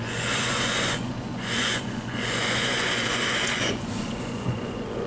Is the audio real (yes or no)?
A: no